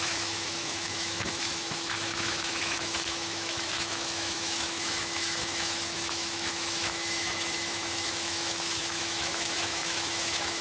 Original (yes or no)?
no